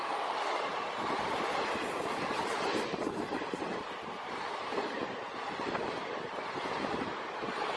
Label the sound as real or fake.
real